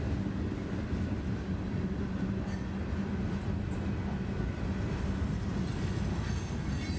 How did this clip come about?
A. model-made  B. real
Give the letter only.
B